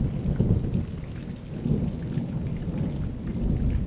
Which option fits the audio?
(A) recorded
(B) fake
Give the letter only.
A